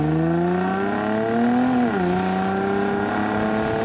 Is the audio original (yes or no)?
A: yes